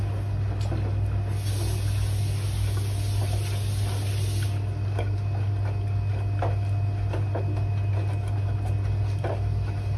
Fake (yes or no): no